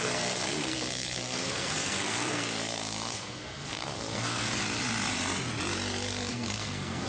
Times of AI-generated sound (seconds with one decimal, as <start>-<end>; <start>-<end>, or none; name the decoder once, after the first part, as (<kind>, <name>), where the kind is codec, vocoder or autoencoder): 0.0-4.6 (codec, SNAC); 6.3-7.1